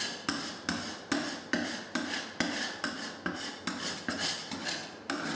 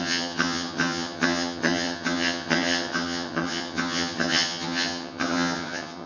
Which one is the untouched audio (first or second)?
first